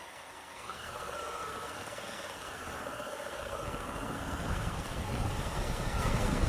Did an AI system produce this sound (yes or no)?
yes